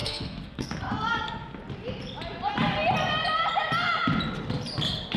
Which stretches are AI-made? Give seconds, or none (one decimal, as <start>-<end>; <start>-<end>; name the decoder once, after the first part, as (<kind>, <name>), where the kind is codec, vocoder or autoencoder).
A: 0.0-0.8 (codec, SNAC)